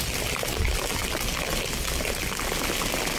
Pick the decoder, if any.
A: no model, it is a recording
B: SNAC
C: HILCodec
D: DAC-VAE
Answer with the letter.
A